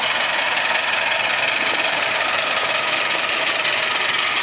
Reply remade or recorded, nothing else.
recorded